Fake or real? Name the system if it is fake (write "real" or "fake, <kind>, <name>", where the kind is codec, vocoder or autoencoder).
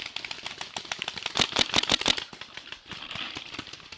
real